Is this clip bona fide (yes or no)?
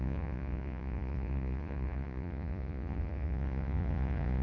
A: no